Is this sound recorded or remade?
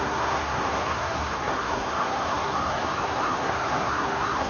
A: remade